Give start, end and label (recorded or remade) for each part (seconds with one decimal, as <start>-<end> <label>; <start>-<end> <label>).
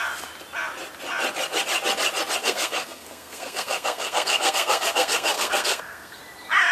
0.0-2.4 recorded; 2.4-6.2 remade; 6.2-6.7 recorded